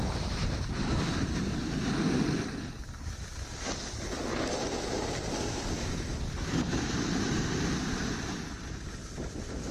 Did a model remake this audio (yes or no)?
no